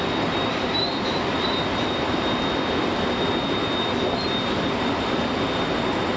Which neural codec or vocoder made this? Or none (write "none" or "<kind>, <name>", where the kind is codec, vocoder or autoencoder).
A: none